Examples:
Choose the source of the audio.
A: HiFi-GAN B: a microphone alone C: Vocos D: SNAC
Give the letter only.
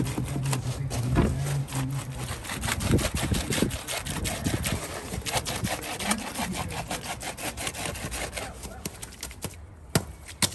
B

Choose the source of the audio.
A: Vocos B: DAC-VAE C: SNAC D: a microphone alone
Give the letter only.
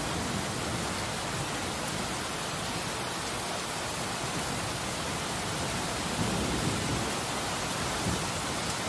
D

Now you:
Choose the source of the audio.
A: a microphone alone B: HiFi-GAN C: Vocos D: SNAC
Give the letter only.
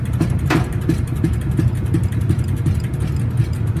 A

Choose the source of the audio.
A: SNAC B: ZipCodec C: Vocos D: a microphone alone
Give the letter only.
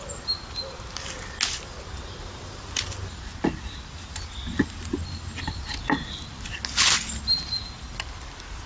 D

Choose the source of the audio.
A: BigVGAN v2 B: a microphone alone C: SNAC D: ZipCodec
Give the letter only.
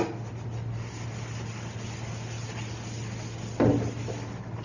B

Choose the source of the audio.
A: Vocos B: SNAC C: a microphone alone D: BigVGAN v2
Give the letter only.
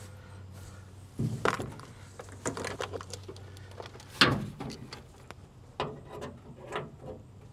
C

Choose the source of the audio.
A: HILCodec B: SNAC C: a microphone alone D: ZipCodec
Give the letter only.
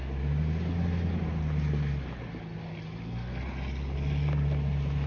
C